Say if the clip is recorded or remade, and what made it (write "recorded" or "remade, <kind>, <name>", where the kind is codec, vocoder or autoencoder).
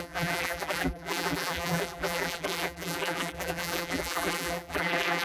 remade, vocoder, BigVGAN v2